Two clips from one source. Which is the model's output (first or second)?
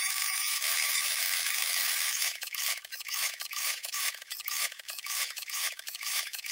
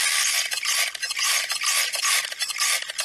first